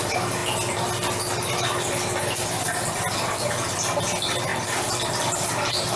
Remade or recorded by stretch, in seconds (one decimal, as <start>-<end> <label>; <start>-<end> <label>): 0.0-6.0 recorded